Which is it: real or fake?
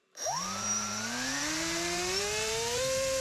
fake